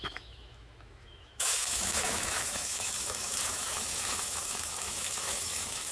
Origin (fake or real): fake